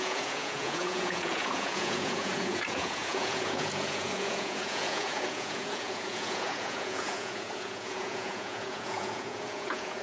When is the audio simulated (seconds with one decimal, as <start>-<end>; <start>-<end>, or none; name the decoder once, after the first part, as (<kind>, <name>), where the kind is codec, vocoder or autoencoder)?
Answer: 0.0-10.0 (vocoder, Vocos)